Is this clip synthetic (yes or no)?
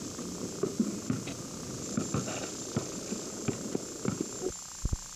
no